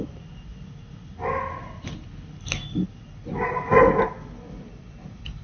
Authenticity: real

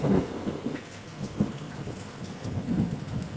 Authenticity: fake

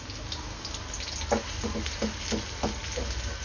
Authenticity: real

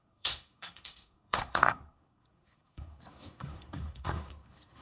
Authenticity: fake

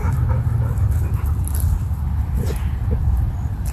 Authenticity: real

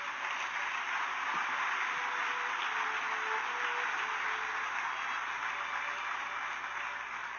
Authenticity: real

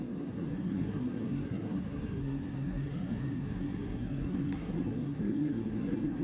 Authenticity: fake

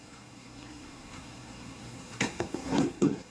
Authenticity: fake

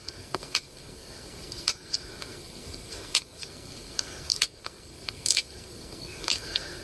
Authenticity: fake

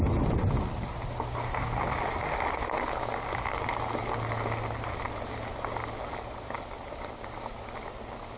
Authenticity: real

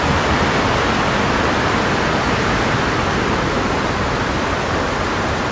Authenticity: real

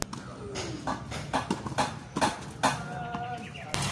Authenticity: real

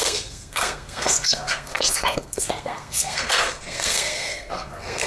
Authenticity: fake